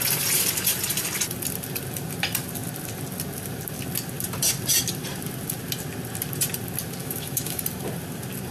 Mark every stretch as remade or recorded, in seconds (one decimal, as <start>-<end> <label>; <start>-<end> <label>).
0.0-7.0 recorded; 7.0-7.6 remade; 7.6-8.5 recorded

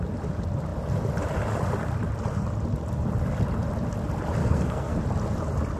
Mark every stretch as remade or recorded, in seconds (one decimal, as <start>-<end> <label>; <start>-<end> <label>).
0.0-4.4 recorded; 4.4-5.0 remade; 5.0-5.8 recorded

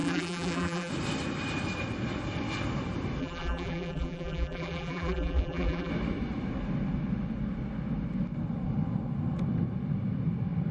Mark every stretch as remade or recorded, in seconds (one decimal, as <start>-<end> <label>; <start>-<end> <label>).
0.0-0.9 remade; 0.9-3.2 recorded; 3.2-5.9 remade; 5.9-10.7 recorded